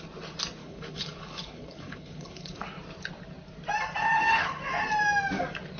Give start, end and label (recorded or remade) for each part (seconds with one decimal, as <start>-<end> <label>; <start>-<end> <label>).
0.0-0.6 recorded; 0.6-2.6 remade; 2.6-4.0 recorded; 4.0-4.6 remade; 4.6-5.8 recorded